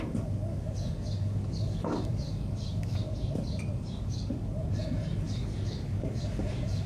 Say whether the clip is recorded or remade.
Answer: remade